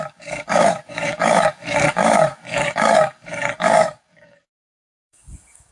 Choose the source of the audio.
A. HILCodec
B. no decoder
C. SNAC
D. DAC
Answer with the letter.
D